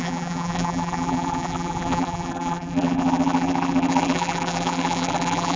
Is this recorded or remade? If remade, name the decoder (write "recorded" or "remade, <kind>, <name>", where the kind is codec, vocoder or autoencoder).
remade, vocoder, BigVGAN v2